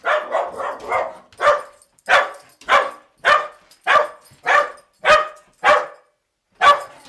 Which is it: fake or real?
real